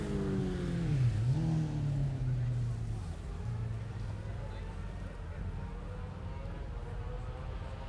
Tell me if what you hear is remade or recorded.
recorded